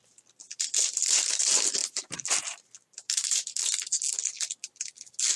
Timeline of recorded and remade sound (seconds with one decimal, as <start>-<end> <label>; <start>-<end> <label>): 0.0-5.4 recorded